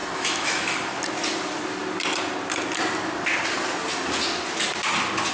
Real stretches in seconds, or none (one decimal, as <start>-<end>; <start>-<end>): 1.0-5.3